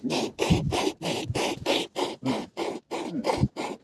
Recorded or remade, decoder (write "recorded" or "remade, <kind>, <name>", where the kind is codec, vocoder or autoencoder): recorded